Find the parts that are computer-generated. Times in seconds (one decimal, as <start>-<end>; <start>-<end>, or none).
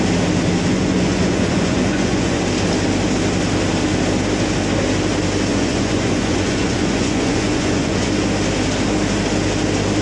0.7-2.4; 5.5-8.1